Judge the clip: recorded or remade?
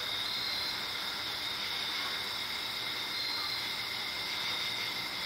recorded